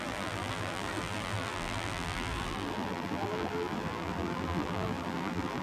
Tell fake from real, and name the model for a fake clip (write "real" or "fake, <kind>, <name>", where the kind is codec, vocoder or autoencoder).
fake, vocoder, BigVGAN v2